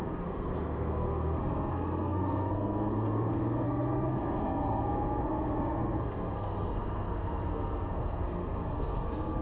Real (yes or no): no